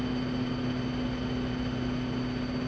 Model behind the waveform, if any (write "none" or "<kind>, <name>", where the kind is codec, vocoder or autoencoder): none